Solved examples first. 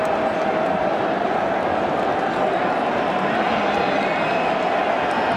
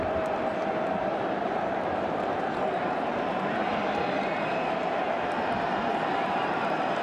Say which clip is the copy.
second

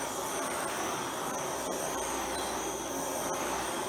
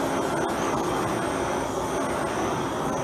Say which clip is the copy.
first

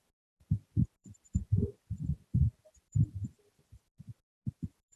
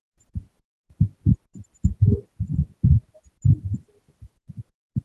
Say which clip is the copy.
first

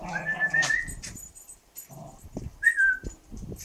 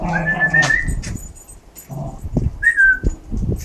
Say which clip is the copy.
first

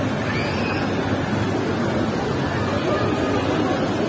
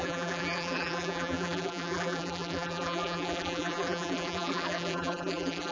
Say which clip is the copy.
second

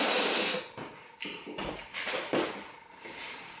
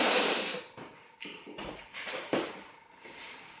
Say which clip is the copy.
second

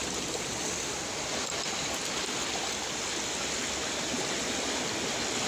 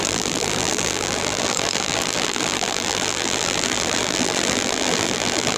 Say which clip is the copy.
second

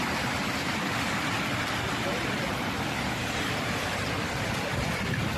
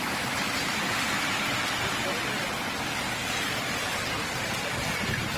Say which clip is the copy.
first